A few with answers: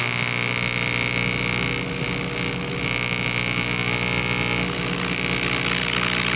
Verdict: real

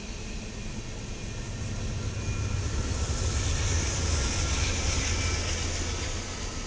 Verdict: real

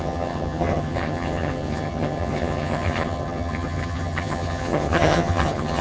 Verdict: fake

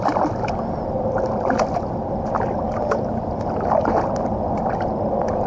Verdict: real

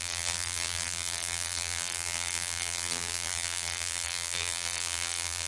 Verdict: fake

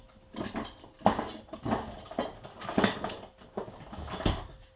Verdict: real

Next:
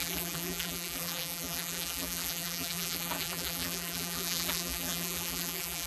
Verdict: fake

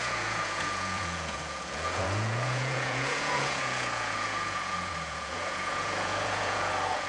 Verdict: fake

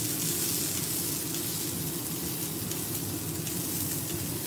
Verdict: real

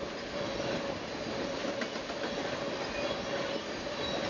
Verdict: real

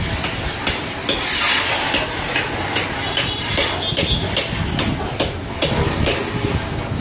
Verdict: real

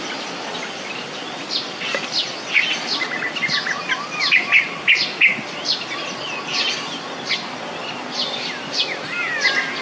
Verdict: real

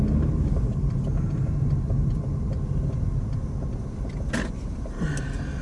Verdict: real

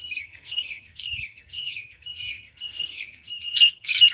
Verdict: fake